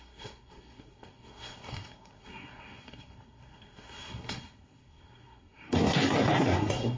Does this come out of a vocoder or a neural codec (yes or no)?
yes